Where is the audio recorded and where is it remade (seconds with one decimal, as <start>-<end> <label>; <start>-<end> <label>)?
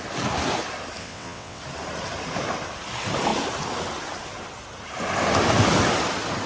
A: 0.0-1.0 recorded; 1.0-1.6 remade; 1.6-6.5 recorded